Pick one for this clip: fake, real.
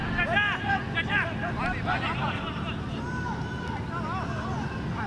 real